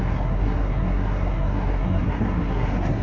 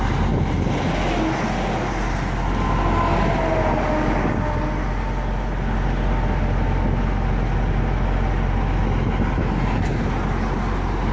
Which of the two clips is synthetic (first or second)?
first